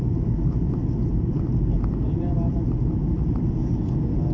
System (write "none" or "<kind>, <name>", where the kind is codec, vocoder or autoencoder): none